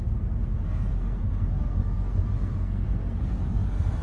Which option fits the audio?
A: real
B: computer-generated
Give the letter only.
B